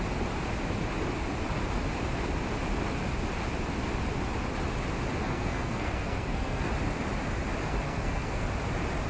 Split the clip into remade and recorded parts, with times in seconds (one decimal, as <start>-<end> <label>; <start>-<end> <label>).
0.0-5.2 recorded; 5.2-6.7 remade; 6.7-7.6 recorded; 7.6-8.5 remade; 8.5-9.1 recorded